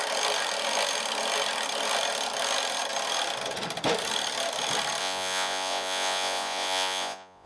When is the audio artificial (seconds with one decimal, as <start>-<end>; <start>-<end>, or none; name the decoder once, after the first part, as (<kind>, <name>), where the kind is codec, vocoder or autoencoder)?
5.0-7.5 (vocoder, Vocos)